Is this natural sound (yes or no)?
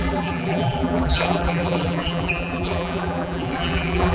no